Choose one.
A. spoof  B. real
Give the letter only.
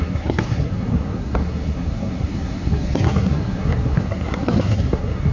A